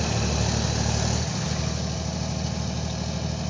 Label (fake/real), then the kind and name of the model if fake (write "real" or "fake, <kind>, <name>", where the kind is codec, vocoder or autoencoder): real